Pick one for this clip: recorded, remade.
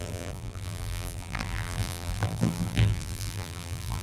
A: remade